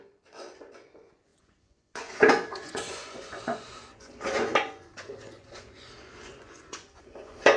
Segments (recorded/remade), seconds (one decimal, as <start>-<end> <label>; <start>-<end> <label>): 0.0-7.6 remade